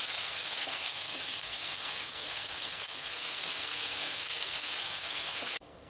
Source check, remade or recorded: remade